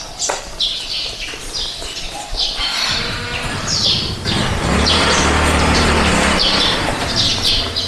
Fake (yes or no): yes